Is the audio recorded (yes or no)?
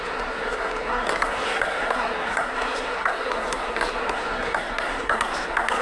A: no